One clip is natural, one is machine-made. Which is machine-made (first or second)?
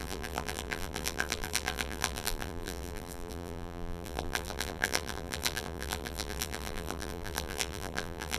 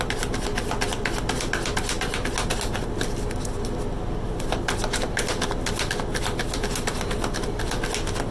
first